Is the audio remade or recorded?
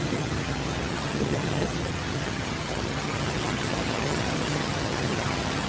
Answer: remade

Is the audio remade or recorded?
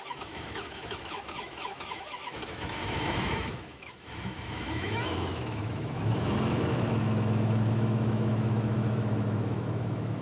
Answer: remade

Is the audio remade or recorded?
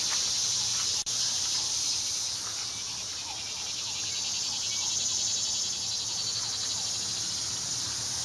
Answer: recorded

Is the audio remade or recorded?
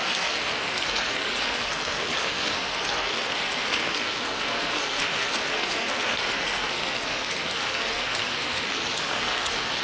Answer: remade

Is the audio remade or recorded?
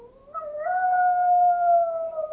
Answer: recorded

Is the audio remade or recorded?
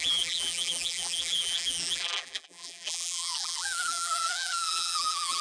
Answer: remade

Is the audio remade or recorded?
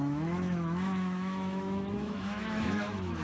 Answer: remade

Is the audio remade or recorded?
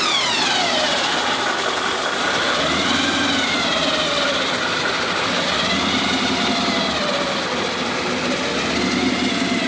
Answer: recorded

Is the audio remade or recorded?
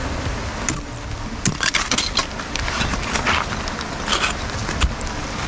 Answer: recorded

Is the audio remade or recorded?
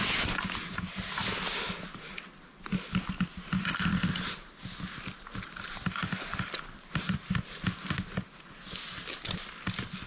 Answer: recorded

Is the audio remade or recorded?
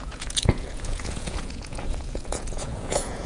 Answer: remade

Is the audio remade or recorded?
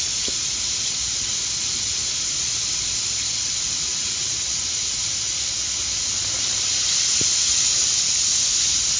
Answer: recorded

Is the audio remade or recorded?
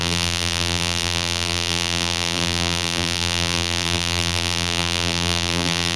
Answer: remade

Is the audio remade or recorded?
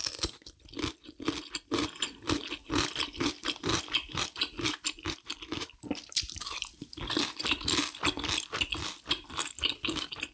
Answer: recorded